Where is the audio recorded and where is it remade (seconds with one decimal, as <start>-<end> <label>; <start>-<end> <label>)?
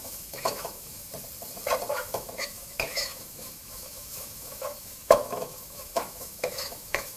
0.0-1.1 remade; 1.1-1.9 recorded; 1.9-7.2 remade